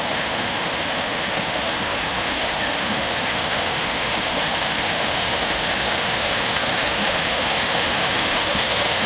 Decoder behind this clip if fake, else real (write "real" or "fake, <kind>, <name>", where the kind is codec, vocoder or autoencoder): fake, autoencoder, DAC-VAE